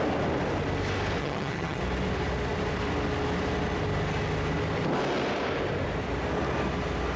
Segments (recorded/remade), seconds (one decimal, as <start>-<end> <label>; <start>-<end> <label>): 0.0-1.2 recorded; 1.2-1.8 remade; 1.8-7.2 recorded